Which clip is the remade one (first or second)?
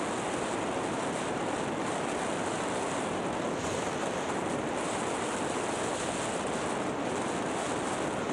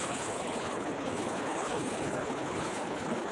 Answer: second